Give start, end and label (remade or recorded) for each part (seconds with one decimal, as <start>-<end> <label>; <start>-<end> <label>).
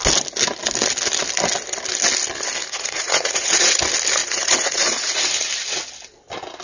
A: 0.0-2.6 recorded; 2.6-3.8 remade; 3.8-4.2 recorded; 4.2-5.3 remade; 5.3-6.6 recorded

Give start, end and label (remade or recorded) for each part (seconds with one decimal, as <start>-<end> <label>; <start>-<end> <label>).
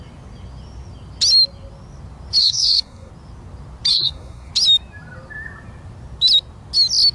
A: 0.0-2.4 recorded; 2.4-3.1 remade; 3.1-3.9 recorded; 3.9-4.5 remade; 4.5-7.1 recorded